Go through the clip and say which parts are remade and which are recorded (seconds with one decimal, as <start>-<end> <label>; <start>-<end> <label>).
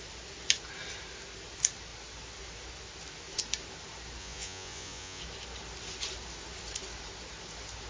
0.0-4.2 recorded; 4.2-5.2 remade; 5.2-7.9 recorded